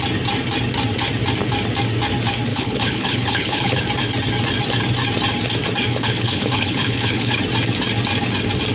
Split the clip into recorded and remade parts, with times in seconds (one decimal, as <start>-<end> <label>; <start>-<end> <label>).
0.0-2.5 recorded; 2.5-3.8 remade; 3.8-5.9 recorded; 5.9-7.4 remade; 7.4-8.7 recorded